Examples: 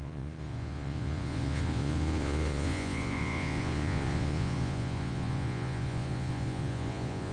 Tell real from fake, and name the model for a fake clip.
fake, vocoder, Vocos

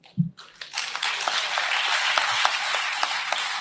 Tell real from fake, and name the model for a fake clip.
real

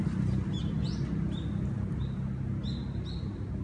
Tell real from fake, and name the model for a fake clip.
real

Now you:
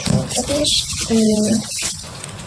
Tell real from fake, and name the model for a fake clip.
fake, vocoder, Vocos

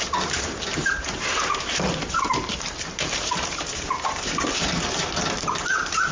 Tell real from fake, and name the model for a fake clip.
fake, vocoder, BigVGAN v2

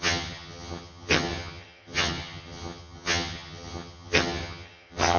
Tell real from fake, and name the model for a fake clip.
fake, vocoder, HiFi-GAN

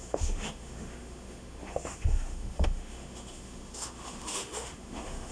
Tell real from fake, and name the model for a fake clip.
fake, autoencoder, DAC-VAE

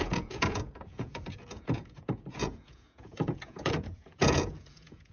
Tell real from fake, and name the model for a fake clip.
fake, vocoder, Vocos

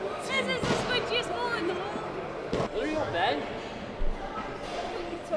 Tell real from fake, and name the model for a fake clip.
real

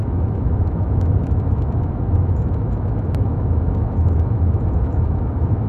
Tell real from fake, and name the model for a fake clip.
fake, autoencoder, DAC-VAE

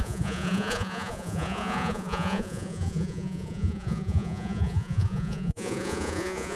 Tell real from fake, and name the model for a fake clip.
fake, vocoder, Vocos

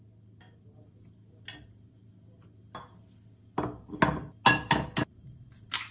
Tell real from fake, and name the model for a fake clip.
real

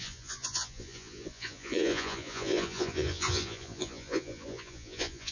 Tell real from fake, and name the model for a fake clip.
fake, vocoder, Vocos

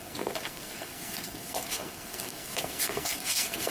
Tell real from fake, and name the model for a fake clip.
fake, codec, SNAC